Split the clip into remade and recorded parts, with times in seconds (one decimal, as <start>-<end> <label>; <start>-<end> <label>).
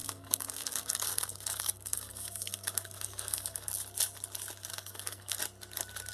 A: 0.0-3.7 remade; 3.7-4.7 recorded; 4.7-5.4 remade; 5.4-6.1 recorded